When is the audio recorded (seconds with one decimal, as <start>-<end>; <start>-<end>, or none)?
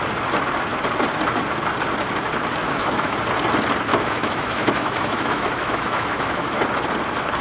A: 0.0-2.6; 3.2-3.9; 6.6-7.4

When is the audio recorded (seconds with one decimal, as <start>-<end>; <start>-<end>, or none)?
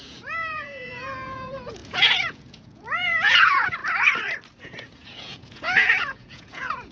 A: 3.8-4.6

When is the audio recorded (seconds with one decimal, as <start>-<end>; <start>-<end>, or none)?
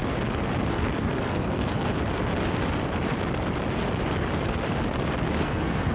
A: 0.0-0.7; 1.9-5.4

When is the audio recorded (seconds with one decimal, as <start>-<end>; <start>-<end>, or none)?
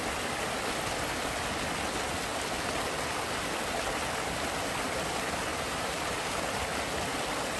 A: 0.0-5.5; 6.4-7.6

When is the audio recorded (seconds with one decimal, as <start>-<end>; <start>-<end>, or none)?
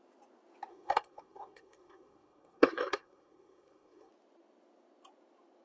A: 0.0-0.7; 4.1-5.6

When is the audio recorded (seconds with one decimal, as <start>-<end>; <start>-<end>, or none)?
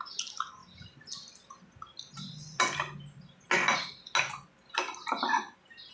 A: 0.0-5.9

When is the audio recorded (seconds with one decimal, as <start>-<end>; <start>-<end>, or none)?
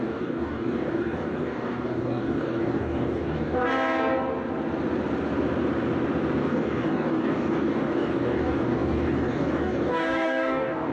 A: 3.6-6.4